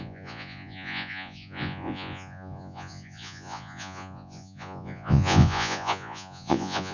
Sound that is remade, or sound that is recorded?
remade